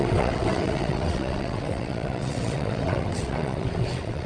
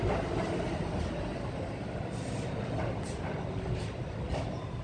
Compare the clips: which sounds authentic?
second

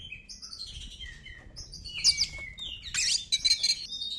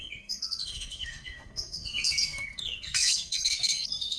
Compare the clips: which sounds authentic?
first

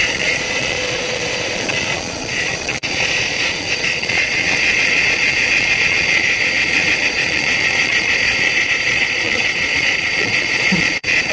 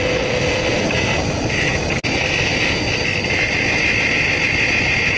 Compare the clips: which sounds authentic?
second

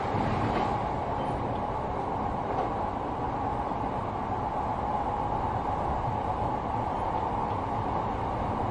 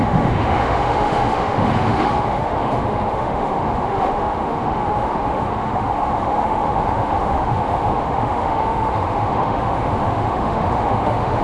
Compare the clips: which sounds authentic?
first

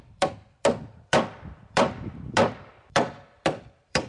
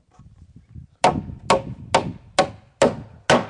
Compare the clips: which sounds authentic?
second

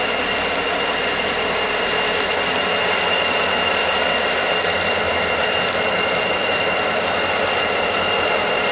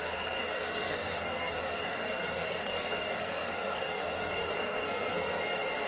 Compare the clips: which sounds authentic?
first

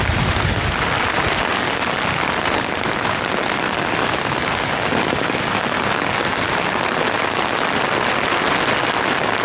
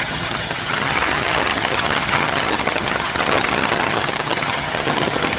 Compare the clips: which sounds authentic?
first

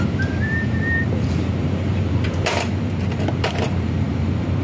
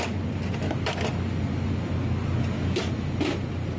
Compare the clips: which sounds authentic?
second